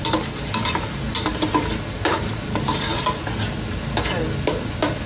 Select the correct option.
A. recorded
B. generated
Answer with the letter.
A